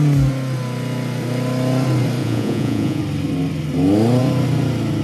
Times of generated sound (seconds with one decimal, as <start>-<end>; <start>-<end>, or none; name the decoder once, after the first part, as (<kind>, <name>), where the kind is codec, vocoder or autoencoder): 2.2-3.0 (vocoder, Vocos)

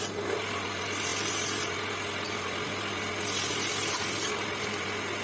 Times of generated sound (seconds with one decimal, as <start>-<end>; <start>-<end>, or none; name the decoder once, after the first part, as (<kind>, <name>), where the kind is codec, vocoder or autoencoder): none

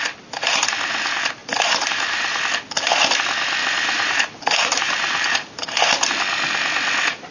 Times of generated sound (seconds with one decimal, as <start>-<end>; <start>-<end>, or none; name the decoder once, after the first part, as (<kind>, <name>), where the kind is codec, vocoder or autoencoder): 1.4-2.4 (vocoder, BigVGAN v2); 3.6-5.9

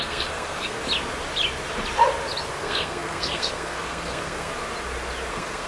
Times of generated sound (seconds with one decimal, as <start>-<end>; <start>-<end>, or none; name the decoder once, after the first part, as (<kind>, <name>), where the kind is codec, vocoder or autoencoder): 0.0-0.8 (codec, SNAC); 2.5-4.5; 5.3-5.7